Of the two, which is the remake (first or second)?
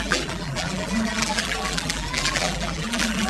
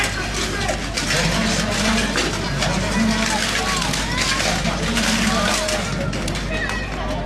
first